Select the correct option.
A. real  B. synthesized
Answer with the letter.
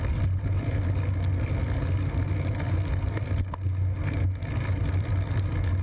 A